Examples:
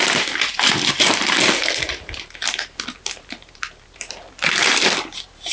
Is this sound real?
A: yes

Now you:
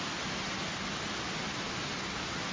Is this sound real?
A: yes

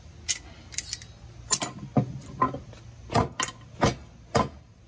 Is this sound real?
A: yes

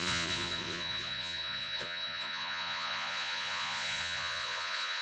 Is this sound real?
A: no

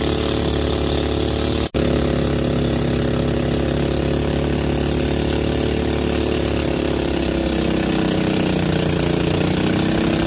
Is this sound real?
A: yes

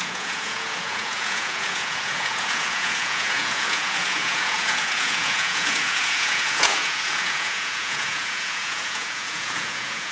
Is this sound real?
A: no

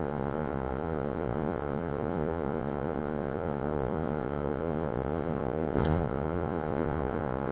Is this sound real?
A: no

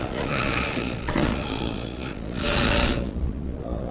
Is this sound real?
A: no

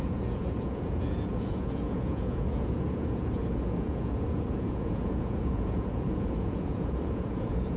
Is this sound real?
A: no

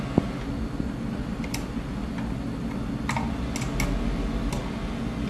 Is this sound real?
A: yes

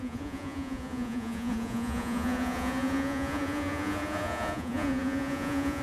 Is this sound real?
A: no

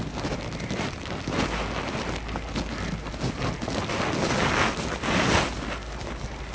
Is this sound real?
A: yes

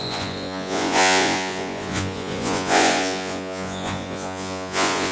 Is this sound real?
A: no